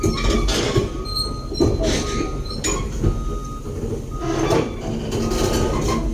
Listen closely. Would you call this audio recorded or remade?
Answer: recorded